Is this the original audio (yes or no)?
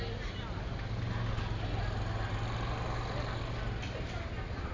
yes